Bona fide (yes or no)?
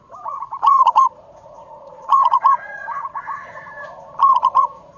no